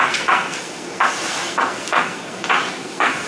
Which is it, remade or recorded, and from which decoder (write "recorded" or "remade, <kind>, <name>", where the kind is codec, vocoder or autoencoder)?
remade, codec, SNAC